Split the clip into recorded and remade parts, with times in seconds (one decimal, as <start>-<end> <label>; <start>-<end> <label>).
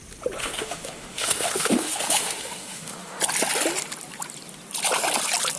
0.0-0.4 recorded; 0.4-3.2 remade; 3.2-5.6 recorded